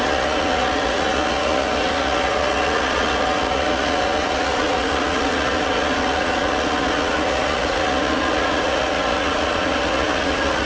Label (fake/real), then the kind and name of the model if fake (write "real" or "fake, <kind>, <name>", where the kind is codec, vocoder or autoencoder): fake, vocoder, Vocos